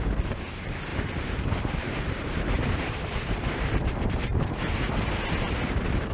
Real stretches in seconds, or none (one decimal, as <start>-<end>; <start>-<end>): none